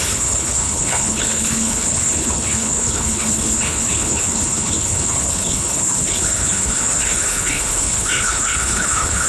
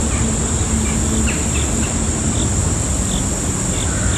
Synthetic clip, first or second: first